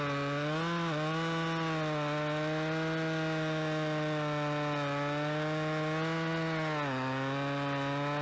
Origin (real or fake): real